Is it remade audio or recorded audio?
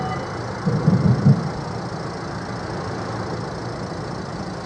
recorded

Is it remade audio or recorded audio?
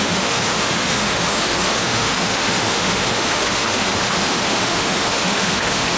remade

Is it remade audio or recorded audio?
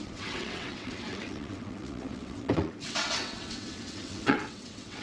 remade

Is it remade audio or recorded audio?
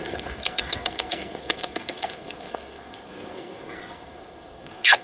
remade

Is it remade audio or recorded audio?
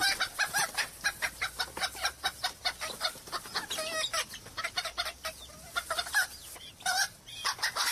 recorded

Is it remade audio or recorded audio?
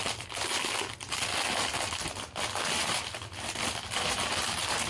recorded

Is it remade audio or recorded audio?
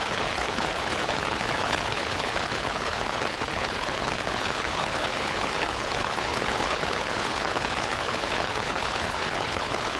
remade